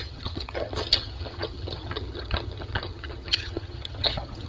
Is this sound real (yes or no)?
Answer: no